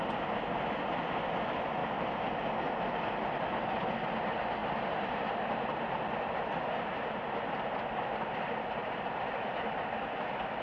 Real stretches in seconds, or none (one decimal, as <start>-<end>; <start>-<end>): 0.0-10.6